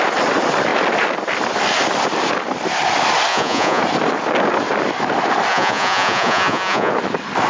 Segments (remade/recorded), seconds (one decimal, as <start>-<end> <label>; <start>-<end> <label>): 0.0-3.3 recorded; 3.3-3.8 remade; 3.8-5.5 recorded; 5.5-6.9 remade; 6.9-7.5 recorded

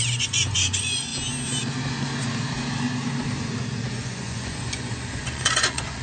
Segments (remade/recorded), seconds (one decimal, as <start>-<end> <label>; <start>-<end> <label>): 0.0-1.1 remade; 1.1-3.9 recorded; 3.9-6.0 remade